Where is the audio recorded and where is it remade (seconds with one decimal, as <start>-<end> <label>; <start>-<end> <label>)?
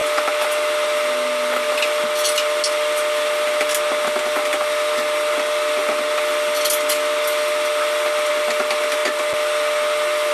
0.0-10.3 recorded